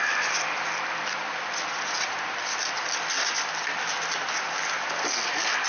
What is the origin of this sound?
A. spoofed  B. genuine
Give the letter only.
B